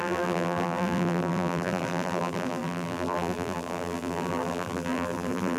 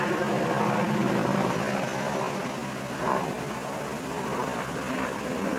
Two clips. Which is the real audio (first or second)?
second